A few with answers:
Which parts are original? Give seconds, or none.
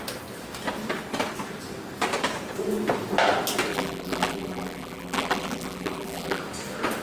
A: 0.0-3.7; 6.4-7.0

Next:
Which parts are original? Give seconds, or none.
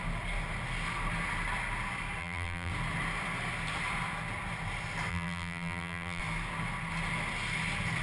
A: 0.0-2.2; 2.7-5.1; 6.2-8.0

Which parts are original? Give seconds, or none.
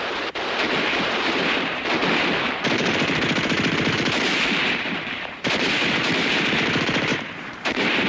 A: 2.0-2.7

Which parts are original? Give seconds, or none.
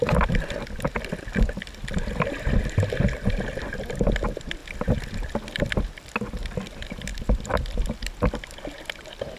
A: 0.0-7.1; 8.1-9.4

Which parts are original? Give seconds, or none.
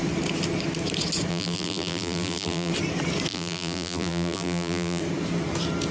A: 0.0-1.3; 2.7-3.3; 5.0-5.9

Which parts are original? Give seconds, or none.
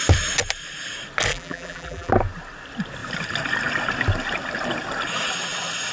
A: 0.0-1.3; 2.1-5.9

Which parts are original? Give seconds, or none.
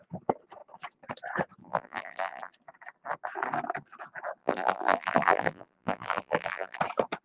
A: 0.0-1.6; 2.5-4.4; 6.8-7.2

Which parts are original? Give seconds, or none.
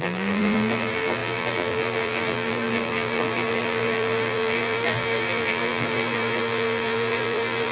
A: none